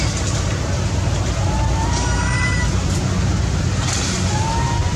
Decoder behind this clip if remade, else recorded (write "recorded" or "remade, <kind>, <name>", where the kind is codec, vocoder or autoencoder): recorded